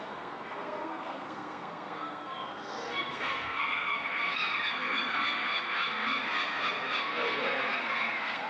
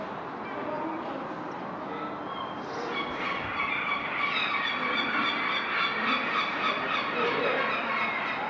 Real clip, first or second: second